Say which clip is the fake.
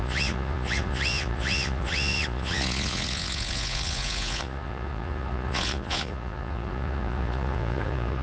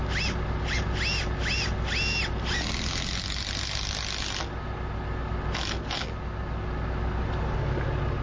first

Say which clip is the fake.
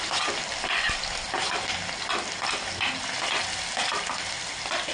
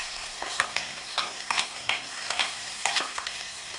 second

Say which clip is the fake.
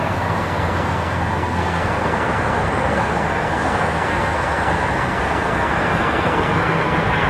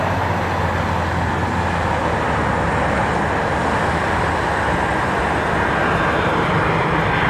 first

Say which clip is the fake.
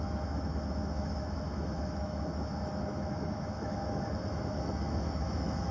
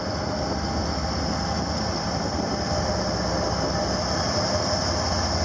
first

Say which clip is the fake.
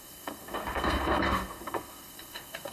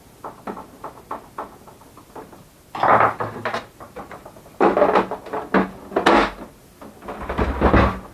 first